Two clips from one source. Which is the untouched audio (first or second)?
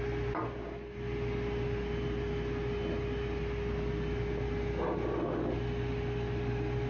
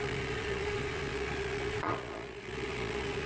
first